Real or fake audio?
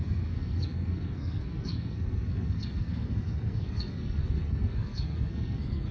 fake